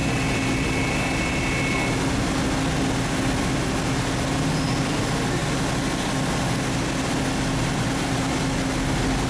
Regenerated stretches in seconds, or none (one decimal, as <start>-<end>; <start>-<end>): none